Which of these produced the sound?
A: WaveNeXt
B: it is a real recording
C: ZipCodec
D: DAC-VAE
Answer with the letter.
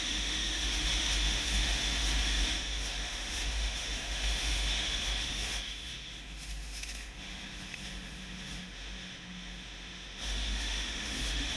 D